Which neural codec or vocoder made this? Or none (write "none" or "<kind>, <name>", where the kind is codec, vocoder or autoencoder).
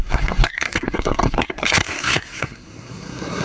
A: codec, SNAC